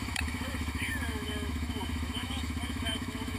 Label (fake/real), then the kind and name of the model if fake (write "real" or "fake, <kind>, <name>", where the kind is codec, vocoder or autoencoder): fake, autoencoder, DAC-VAE